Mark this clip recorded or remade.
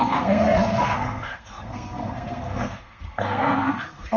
remade